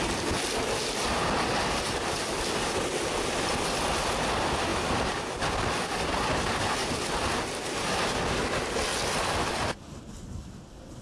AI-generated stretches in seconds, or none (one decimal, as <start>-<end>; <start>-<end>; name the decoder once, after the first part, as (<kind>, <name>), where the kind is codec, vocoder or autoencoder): none